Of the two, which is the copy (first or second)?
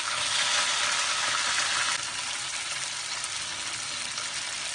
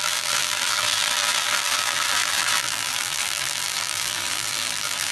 second